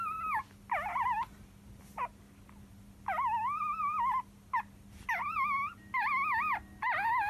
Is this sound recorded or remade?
recorded